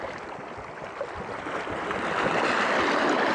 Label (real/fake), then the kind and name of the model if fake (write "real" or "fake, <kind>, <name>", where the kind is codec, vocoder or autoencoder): real